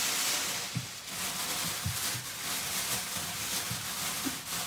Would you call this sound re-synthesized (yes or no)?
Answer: no